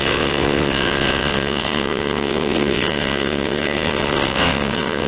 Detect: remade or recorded remade